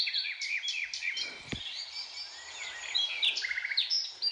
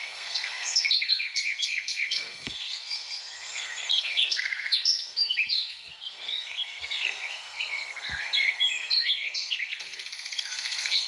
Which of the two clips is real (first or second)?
first